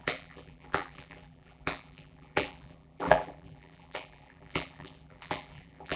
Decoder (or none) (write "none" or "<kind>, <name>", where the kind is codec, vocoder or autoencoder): vocoder, BigVGAN v2